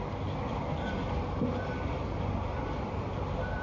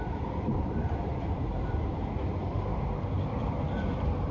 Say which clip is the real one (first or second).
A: first